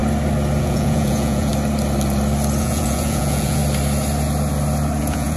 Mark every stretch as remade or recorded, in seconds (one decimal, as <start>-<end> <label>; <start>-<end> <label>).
0.0-0.6 recorded; 0.6-1.5 remade; 1.5-2.6 recorded; 2.6-3.6 remade; 3.6-5.0 recorded; 5.0-5.4 remade